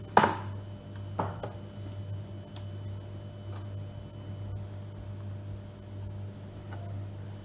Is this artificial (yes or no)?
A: no